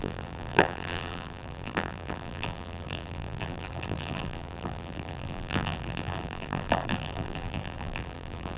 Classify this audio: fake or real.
fake